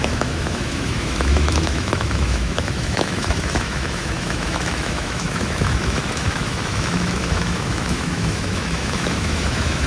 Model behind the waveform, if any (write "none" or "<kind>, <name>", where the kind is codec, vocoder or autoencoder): autoencoder, DAC-VAE